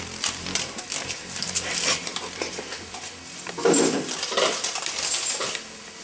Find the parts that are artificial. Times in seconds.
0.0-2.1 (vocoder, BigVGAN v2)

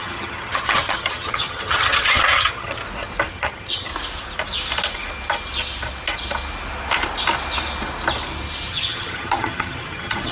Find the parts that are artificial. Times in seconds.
0.0-2.8 (vocoder, HiFi-GAN); 3.3-3.9; 8.7-10.3